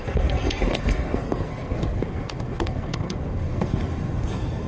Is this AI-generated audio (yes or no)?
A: yes